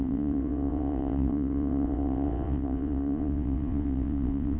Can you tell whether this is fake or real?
fake